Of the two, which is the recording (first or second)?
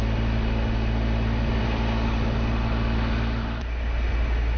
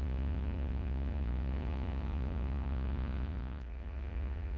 first